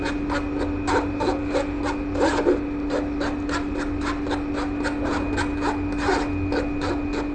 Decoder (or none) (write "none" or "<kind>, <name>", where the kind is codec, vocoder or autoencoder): none